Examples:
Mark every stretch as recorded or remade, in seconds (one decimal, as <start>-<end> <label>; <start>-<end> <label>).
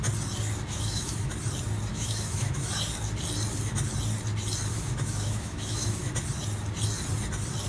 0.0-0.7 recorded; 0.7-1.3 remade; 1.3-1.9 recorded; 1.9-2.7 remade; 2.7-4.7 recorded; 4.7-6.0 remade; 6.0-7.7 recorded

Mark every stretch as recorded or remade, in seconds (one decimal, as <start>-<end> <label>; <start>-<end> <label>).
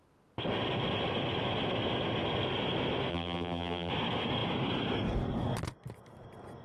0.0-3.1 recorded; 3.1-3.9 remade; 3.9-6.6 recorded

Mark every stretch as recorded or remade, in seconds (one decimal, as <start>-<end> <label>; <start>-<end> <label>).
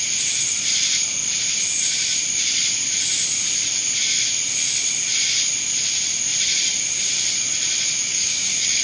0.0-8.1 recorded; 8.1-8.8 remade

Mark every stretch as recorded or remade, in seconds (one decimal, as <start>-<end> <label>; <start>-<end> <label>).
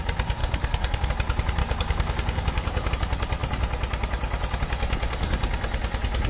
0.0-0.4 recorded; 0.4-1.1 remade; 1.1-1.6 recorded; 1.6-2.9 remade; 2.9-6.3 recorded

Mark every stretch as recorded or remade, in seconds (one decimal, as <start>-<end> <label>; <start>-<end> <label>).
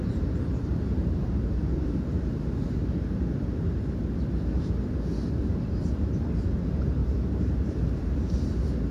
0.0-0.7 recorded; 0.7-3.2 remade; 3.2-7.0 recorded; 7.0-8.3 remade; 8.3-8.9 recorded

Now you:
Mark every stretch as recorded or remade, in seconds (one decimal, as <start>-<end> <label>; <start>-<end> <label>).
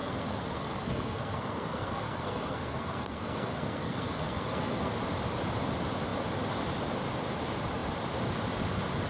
0.0-4.9 remade; 4.9-9.1 recorded